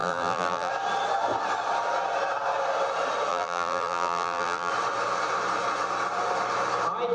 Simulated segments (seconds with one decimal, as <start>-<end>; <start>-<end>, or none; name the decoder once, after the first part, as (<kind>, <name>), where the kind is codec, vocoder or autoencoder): 0.0-0.7 (vocoder, BigVGAN v2); 3.3-4.7